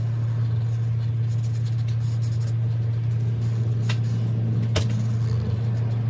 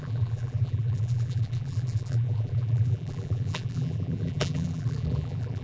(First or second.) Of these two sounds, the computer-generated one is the second